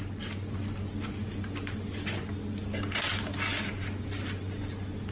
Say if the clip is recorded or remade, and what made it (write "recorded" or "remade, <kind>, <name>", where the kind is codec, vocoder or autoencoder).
recorded